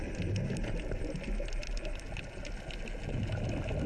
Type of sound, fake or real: real